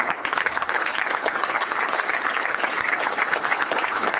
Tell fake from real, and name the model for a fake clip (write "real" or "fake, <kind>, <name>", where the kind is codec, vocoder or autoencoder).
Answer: fake, codec, HILCodec